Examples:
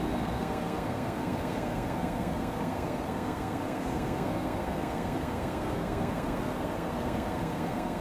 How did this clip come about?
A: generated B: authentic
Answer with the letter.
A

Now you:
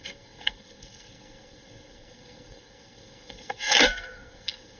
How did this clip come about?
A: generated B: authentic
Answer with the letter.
A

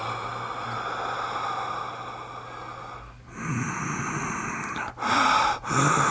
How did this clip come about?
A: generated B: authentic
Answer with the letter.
B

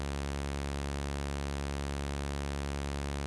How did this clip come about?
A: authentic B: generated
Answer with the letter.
A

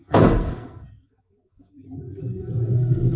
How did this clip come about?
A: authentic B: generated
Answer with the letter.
B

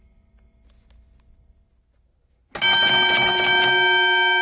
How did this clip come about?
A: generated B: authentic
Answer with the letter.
B